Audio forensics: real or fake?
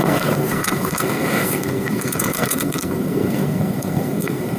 fake